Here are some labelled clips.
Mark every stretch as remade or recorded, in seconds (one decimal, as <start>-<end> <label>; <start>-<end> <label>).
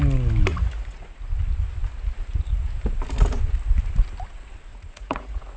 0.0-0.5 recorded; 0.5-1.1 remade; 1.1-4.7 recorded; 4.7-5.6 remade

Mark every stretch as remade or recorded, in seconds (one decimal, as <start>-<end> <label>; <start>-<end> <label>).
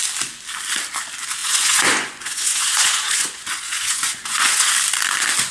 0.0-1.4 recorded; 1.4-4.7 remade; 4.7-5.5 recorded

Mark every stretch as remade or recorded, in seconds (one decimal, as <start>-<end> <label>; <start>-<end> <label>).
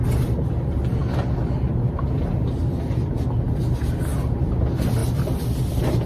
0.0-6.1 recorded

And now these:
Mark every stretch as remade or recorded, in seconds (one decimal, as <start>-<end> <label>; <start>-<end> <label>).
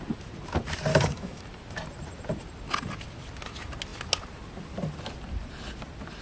0.0-0.9 recorded; 0.9-1.4 remade; 1.4-6.2 recorded